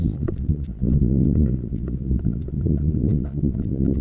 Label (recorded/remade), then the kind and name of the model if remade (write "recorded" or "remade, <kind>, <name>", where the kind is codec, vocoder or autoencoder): remade, vocoder, Vocos